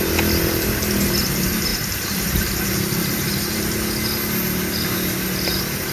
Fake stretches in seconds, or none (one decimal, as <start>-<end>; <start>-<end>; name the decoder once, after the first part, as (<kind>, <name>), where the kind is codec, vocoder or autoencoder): 1.7-3.7 (vocoder, BigVGAN v2)